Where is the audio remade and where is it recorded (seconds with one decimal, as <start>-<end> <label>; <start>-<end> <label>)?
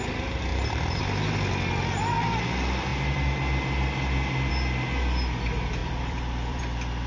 0.0-0.5 recorded; 0.5-1.0 remade; 1.0-5.8 recorded; 5.8-6.6 remade; 6.6-7.1 recorded